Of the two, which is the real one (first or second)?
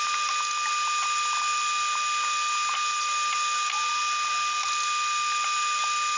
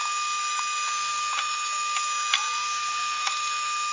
first